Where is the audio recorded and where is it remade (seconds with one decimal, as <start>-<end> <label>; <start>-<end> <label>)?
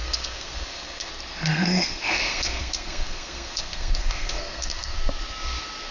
0.0-1.1 remade; 1.1-1.5 recorded; 1.5-5.0 remade; 5.0-5.9 recorded